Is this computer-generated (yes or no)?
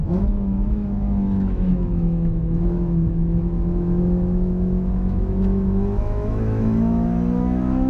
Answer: yes